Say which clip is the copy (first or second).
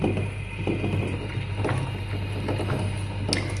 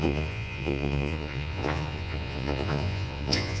second